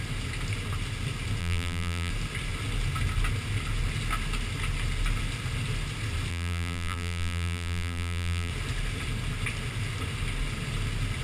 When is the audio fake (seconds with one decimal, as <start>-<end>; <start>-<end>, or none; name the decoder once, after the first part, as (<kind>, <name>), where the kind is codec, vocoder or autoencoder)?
1.4-2.1 (vocoder, BigVGAN v2); 6.3-8.5